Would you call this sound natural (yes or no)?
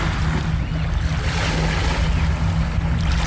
yes